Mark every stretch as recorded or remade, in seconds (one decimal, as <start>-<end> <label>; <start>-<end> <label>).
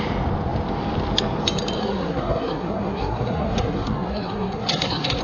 0.0-1.8 recorded; 1.8-5.2 remade